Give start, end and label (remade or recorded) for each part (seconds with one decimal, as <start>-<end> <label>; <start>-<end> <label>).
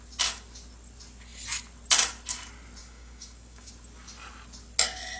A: 0.0-2.8 recorded; 2.8-3.7 remade; 3.7-5.2 recorded